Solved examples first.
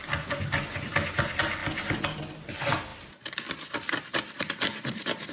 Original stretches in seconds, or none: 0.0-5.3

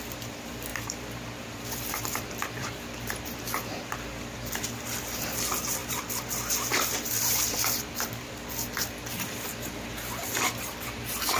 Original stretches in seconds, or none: 0.0-0.7; 3.4-5.8; 8.3-11.4

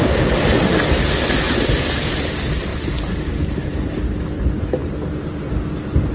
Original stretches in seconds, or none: 0.0-2.7; 4.0-6.1

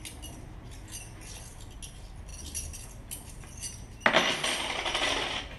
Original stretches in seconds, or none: 0.0-5.6

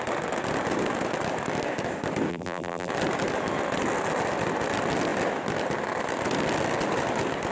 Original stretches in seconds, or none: 0.0-2.3; 2.9-7.5

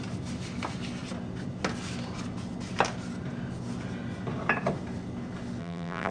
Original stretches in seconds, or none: 0.0-5.6